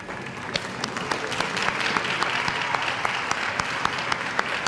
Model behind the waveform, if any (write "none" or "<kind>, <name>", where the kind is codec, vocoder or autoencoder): none